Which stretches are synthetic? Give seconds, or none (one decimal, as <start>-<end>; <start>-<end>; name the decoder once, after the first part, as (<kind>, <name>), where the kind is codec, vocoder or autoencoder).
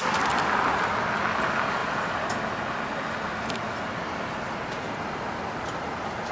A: none